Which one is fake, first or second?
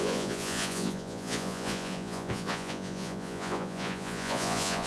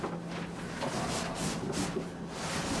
first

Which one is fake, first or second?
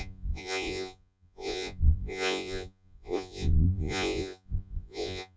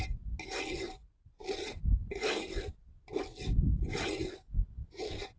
first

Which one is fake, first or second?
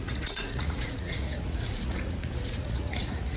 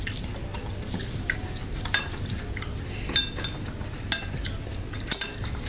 first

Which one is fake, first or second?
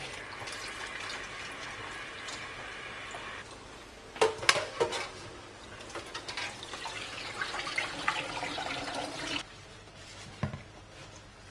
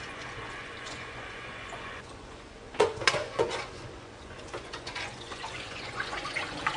second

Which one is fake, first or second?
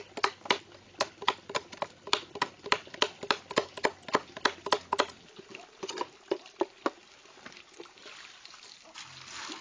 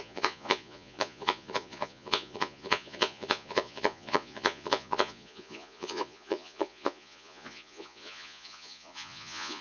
second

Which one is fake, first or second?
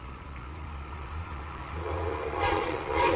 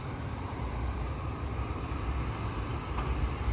first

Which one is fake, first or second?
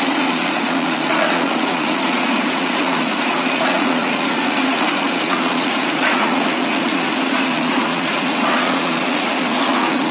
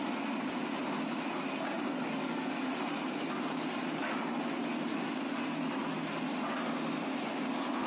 first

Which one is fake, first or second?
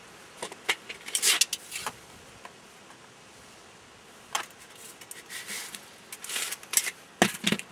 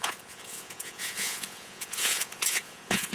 second